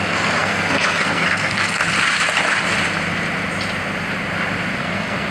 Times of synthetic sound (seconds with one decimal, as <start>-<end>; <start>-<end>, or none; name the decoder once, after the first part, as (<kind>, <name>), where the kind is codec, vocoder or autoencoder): 0.0-1.8 (codec, SNAC); 4.8-5.3